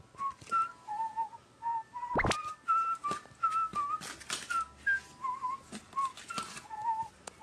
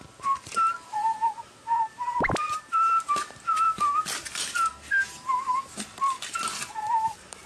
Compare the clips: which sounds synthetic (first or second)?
second